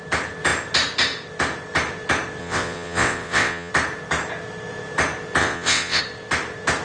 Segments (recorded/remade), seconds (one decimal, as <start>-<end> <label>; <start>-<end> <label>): 0.0-2.4 recorded; 2.4-3.7 remade; 3.7-5.4 recorded; 5.4-6.0 remade; 6.0-6.8 recorded